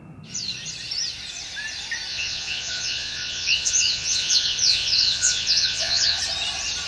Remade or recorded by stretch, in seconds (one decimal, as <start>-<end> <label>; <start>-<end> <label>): 0.0-2.1 recorded; 2.1-6.2 remade; 6.2-6.9 recorded